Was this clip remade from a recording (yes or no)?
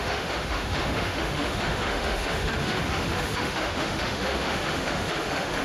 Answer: yes